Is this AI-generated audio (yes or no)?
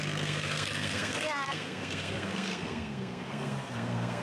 yes